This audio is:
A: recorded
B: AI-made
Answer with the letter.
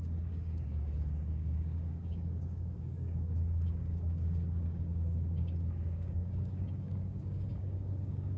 B